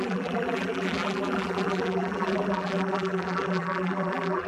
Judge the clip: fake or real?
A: fake